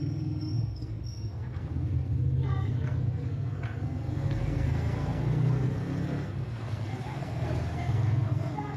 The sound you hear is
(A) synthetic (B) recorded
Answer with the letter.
A